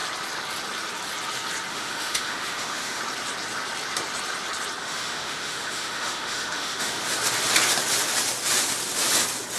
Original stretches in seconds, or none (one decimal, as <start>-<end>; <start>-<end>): 0.0-1.7; 3.0-4.8; 7.0-9.6

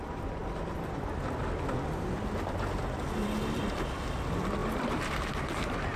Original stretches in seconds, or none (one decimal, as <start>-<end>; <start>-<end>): 0.0-4.6

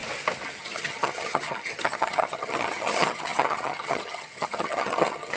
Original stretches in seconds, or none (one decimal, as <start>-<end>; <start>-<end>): 0.0-0.6

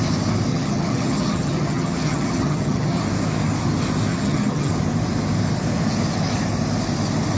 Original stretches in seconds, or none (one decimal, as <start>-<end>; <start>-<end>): 0.0-0.5; 3.0-4.1; 4.7-7.4

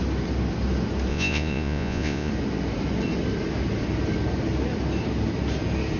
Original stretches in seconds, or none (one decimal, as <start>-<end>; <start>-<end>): 0.0-1.1; 2.3-6.0

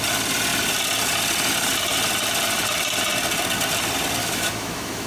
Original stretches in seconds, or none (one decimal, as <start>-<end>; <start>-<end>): 0.0-4.2

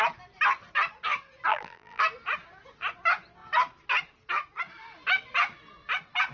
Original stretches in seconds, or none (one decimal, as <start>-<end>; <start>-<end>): 0.0-1.5; 2.0-6.3